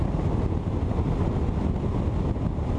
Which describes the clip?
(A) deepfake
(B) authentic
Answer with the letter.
B